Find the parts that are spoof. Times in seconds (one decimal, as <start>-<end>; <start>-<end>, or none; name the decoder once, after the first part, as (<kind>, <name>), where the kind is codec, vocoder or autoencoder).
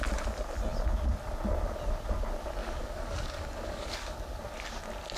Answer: 2.6-4.2 (codec, DAC)